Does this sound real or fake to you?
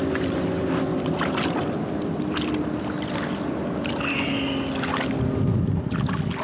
real